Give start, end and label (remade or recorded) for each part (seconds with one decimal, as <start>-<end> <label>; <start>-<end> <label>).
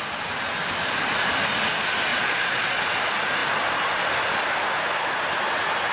0.0-2.1 recorded; 2.1-2.8 remade; 2.8-5.9 recorded